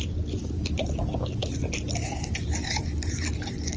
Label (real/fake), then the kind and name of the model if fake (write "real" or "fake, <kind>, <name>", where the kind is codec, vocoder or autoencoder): real